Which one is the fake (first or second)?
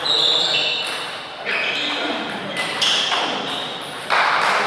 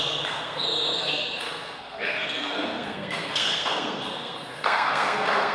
second